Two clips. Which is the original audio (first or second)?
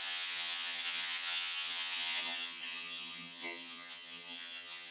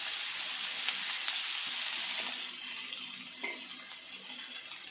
second